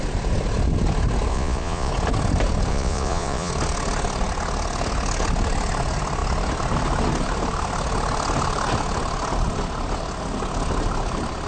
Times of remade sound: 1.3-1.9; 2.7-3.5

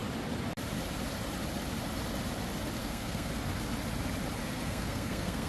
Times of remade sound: 2.8-3.3; 4.4-5.5

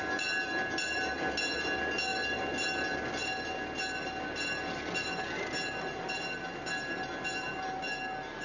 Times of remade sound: none